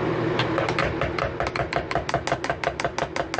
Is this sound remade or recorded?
recorded